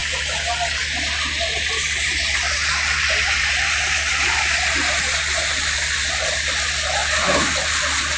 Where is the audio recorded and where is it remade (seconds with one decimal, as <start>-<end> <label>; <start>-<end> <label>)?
0.0-8.2 recorded